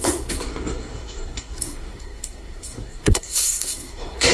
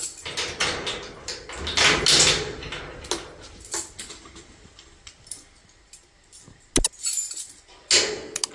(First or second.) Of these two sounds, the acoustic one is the second